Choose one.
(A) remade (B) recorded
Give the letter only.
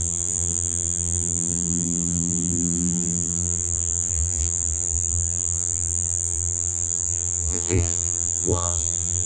A